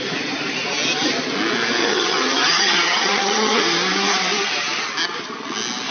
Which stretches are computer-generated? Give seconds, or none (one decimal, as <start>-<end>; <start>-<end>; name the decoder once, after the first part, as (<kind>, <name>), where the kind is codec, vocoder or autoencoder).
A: 1.8-3.6 (vocoder, HiFi-GAN)